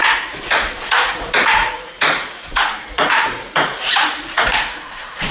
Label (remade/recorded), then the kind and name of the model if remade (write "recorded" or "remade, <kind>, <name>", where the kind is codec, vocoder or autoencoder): remade, vocoder, Vocos